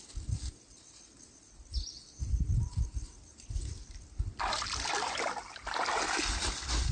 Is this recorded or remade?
recorded